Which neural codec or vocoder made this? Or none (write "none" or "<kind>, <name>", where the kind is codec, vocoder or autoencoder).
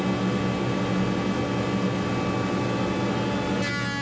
none